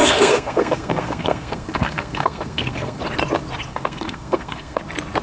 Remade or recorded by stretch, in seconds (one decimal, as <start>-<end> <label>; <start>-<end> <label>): 0.0-3.0 remade; 3.0-3.7 recorded; 3.7-4.8 remade; 4.8-5.2 recorded